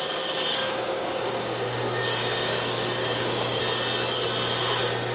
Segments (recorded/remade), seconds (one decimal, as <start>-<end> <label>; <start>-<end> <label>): 0.0-0.5 recorded; 0.5-3.6 remade; 3.6-5.1 recorded